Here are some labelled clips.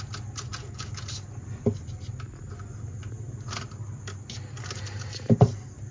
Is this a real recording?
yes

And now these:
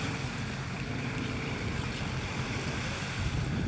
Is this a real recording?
no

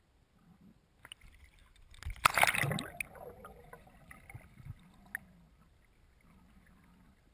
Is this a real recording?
yes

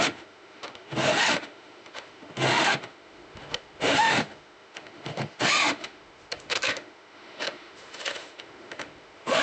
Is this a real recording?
no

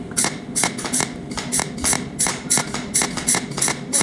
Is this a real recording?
yes